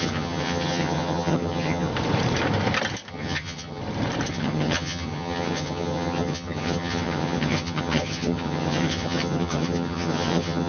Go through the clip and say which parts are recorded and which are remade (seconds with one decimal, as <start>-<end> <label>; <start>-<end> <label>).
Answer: 0.0-1.9 remade; 1.9-3.1 recorded; 3.1-3.8 remade; 3.8-4.3 recorded; 4.3-10.7 remade